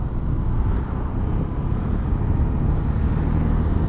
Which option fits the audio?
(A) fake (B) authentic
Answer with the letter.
B